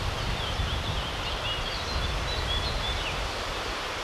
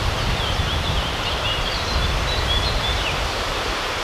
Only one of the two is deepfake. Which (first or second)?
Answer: second